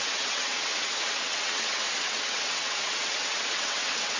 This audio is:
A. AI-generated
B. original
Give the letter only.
A